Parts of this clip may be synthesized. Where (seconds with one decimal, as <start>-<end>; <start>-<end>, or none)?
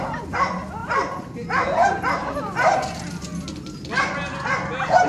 none